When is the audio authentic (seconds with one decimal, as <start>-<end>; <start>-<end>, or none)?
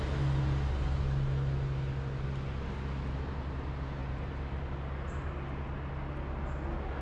0.0-4.0; 4.6-7.0